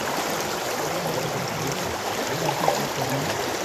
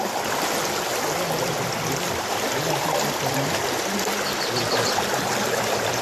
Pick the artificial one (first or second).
first